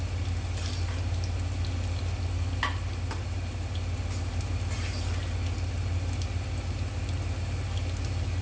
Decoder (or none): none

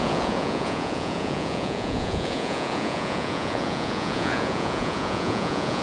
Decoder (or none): vocoder, Vocos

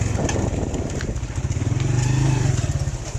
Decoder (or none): none